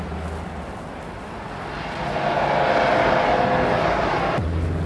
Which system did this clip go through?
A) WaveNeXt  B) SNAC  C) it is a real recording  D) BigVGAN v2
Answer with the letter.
C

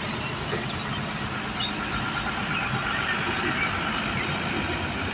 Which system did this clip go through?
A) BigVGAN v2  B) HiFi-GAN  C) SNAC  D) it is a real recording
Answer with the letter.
D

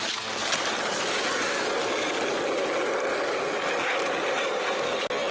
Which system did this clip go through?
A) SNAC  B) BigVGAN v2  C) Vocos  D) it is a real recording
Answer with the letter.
D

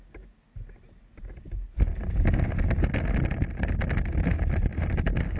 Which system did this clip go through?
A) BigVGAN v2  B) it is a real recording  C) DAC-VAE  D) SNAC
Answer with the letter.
B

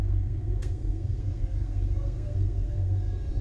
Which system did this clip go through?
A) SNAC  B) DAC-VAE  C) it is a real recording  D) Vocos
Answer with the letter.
A